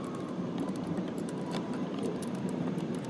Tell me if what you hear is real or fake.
fake